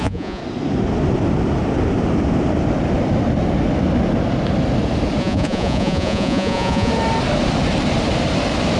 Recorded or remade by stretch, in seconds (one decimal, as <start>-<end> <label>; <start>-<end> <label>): 0.0-0.4 remade; 0.4-5.2 recorded; 5.2-6.9 remade; 6.9-8.8 recorded